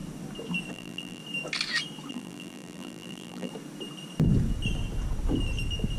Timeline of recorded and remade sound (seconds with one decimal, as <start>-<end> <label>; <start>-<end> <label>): 0.0-0.7 recorded; 0.7-1.2 remade; 1.2-2.1 recorded; 2.1-3.5 remade; 3.5-6.0 recorded